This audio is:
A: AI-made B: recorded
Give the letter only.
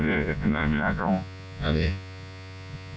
A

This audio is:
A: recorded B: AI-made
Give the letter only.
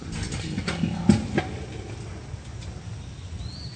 A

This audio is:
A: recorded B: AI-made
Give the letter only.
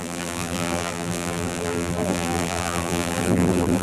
B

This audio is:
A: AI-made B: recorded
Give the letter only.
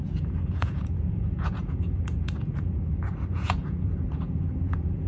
A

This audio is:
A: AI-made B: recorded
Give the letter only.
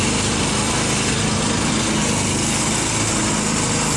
B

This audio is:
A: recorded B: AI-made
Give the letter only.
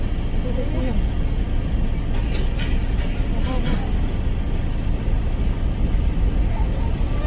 A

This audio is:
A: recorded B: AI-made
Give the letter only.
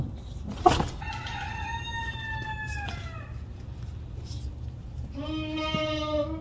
A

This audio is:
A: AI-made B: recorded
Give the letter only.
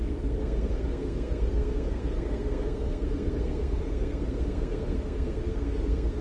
A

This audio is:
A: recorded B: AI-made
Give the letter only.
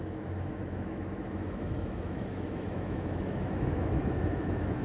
B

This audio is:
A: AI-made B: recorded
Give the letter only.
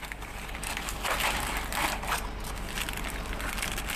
B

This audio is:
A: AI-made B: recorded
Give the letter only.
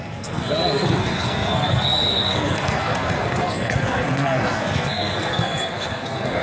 A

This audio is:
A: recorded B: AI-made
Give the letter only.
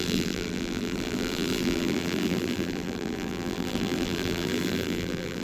B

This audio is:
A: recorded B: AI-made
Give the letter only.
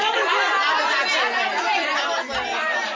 A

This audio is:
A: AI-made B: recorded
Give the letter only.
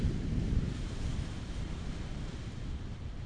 A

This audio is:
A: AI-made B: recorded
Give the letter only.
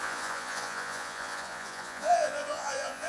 A